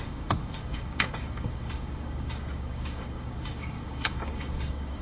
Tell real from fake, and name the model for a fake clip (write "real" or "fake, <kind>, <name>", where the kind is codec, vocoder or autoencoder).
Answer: fake, codec, DAC